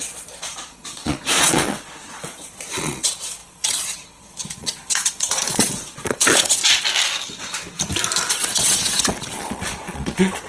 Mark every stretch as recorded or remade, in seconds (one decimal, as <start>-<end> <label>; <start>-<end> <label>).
0.0-6.6 remade; 6.6-8.3 recorded; 8.3-10.5 remade